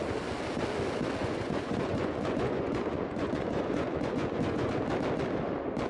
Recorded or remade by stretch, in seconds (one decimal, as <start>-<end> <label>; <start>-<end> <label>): 0.0-1.2 recorded; 1.2-4.7 remade; 4.7-5.9 recorded